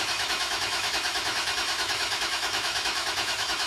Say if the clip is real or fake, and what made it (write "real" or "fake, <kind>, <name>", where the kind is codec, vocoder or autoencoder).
fake, autoencoder, DAC-VAE